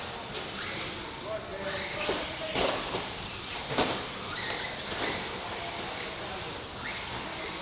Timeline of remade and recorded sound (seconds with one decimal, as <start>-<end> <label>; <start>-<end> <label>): 0.0-7.6 recorded